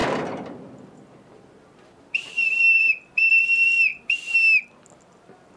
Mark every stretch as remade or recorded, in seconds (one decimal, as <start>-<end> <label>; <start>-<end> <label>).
0.0-3.4 remade; 3.4-5.6 recorded